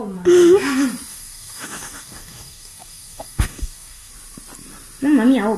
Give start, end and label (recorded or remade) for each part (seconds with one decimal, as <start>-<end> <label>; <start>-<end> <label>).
0.0-1.1 recorded; 1.1-4.1 remade; 4.1-5.6 recorded